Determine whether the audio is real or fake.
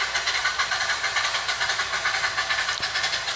real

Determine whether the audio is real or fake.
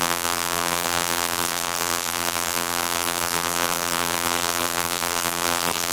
fake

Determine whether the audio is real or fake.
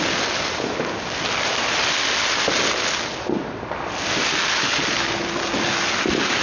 real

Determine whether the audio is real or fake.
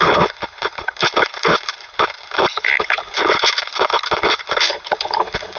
fake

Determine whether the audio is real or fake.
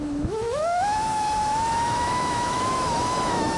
fake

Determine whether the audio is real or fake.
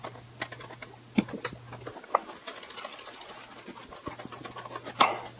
real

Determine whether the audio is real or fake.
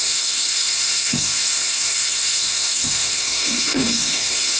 fake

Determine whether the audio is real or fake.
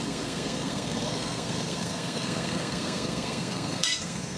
fake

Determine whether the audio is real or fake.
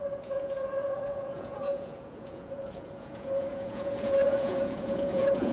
fake